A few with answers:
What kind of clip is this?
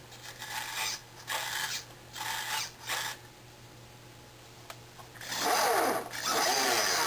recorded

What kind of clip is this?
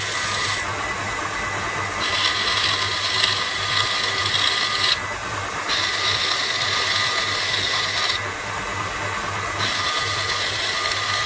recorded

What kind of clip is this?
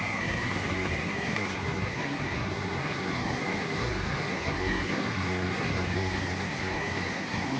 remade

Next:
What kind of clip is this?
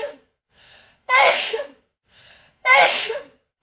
remade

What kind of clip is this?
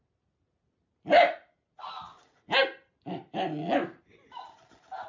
recorded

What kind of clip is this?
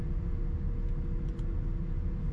recorded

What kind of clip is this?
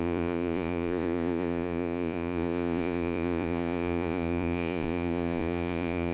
remade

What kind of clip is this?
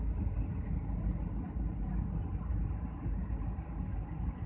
recorded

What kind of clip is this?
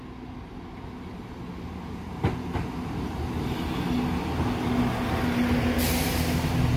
recorded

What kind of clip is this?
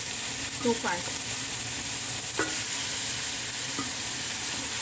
recorded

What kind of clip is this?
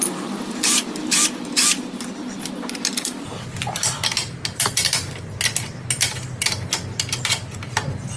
recorded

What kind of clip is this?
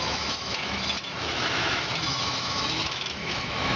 remade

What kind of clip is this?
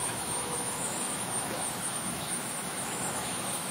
remade